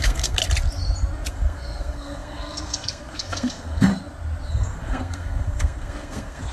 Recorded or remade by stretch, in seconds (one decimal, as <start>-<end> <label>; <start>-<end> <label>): 0.0-0.4 remade; 0.4-1.3 recorded; 1.3-3.9 remade; 3.9-4.5 recorded; 4.5-6.5 remade